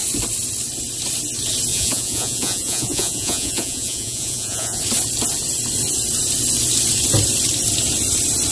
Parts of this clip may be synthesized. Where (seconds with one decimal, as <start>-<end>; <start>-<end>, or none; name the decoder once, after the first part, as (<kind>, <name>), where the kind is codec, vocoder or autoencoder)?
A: 1.7-4.8 (vocoder, Vocos)